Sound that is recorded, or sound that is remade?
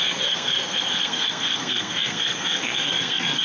remade